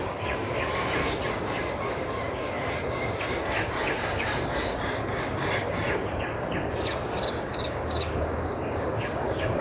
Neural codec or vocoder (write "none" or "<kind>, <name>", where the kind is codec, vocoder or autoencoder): codec, DAC